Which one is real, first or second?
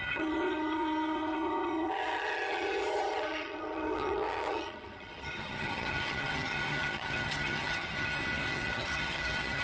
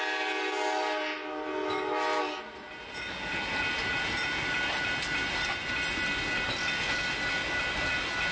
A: second